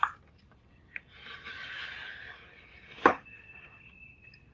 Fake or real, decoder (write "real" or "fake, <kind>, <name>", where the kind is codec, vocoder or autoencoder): real